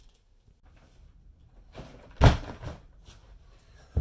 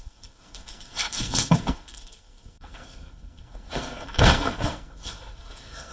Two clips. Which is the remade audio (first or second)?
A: second